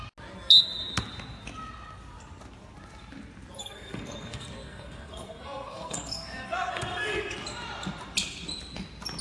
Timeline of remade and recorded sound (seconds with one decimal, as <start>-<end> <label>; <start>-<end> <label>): 0.0-3.6 recorded; 3.6-7.3 remade; 7.3-9.2 recorded

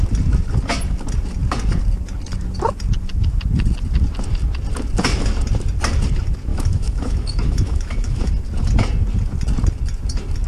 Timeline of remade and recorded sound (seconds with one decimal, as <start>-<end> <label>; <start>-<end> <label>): 0.0-6.5 recorded; 6.5-8.3 remade; 8.3-10.5 recorded

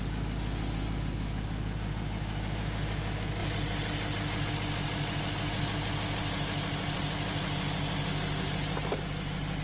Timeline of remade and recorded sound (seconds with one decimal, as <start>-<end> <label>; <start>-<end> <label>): 0.0-9.6 recorded

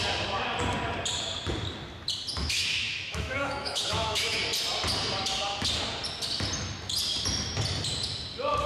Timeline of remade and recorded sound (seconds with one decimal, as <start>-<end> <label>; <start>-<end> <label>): 0.0-2.4 recorded; 2.4-4.4 remade; 4.4-8.7 recorded